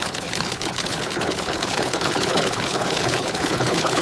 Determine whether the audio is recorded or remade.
remade